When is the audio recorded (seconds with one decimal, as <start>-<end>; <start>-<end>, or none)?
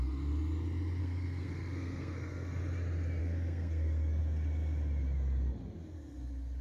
0.0-1.0; 2.6-3.2; 4.2-6.6